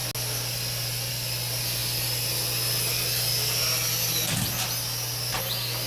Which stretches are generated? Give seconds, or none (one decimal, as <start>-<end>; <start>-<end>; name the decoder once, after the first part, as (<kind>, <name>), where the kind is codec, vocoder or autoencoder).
none

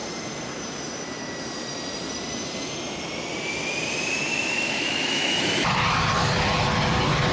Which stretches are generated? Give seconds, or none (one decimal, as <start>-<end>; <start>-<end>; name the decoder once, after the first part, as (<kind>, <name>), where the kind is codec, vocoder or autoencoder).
4.3-5.4 (autoencoder, DAC-VAE)

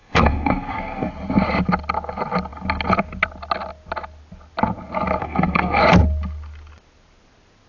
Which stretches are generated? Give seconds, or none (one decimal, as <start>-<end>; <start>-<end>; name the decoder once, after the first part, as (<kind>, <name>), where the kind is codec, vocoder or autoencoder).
0.0-1.1 (codec, SNAC); 5.2-5.8